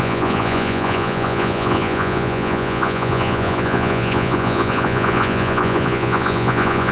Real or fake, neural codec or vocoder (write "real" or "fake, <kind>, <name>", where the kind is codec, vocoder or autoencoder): fake, vocoder, Vocos